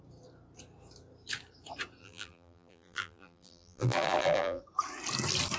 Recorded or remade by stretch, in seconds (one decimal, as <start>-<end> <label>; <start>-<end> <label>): 0.0-2.0 recorded; 2.0-4.6 remade; 4.6-5.6 recorded

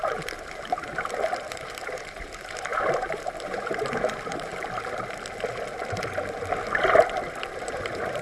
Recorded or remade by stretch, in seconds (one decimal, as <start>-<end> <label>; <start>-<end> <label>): 0.0-4.5 remade; 4.5-7.5 recorded; 7.5-8.2 remade